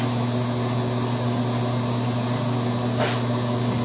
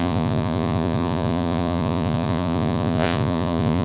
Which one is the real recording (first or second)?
first